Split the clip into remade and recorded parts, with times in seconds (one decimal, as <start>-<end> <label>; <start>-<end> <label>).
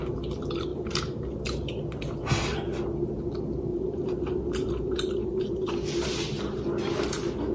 0.0-0.7 recorded; 0.7-1.4 remade; 1.4-3.7 recorded; 3.7-5.7 remade; 5.7-7.5 recorded